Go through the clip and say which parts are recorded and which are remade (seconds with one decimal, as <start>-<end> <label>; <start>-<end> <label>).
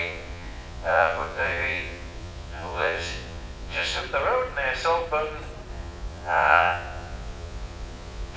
0.0-4.0 remade; 4.0-5.7 recorded; 5.7-8.4 remade